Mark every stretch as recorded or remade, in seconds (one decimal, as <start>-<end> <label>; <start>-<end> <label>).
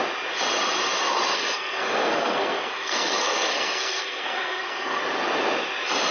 0.0-1.3 recorded; 1.3-5.0 remade; 5.0-6.1 recorded